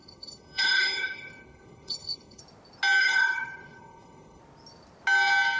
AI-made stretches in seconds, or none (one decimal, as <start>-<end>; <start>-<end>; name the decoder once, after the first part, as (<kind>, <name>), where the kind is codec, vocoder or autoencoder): 0.0-2.4 (codec, HILCodec); 3.0-4.4